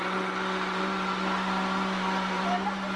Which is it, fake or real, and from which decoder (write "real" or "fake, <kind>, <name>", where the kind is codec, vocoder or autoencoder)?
real